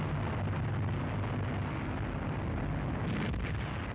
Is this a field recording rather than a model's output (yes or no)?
yes